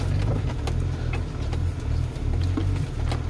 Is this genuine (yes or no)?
yes